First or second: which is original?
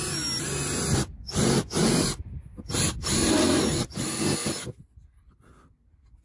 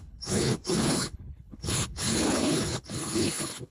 first